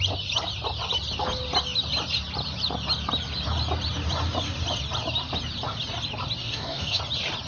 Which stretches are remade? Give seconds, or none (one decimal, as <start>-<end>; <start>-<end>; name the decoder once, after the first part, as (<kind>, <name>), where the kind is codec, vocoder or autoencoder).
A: 6.4-7.0 (codec, DAC)

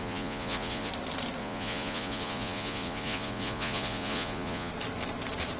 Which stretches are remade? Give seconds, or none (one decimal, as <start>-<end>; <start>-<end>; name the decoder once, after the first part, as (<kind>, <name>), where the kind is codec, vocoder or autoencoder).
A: 0.0-0.9 (vocoder, Vocos); 1.4-4.7

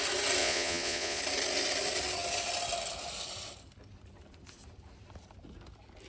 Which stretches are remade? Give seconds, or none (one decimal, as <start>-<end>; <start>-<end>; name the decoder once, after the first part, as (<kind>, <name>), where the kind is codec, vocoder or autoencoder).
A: 0.4-1.2 (vocoder, Vocos)